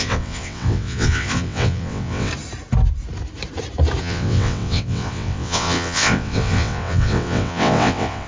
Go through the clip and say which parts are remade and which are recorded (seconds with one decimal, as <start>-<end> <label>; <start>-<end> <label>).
0.0-2.3 remade; 2.3-4.0 recorded; 4.0-8.3 remade